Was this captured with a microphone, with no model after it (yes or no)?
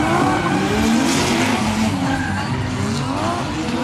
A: yes